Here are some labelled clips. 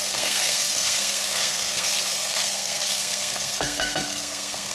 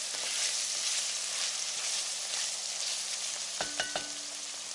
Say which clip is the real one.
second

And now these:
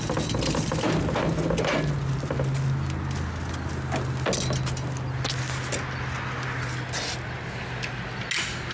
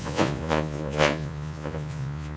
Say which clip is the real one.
first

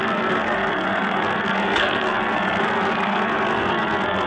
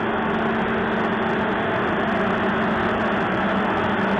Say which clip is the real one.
second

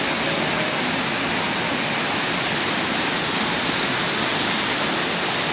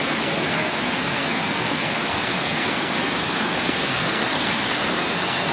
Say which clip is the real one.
first